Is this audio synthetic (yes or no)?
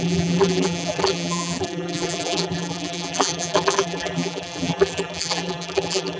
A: yes